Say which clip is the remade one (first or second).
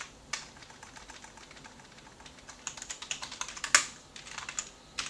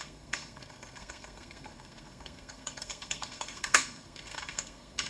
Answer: second